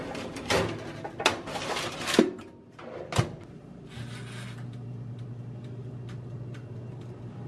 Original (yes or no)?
yes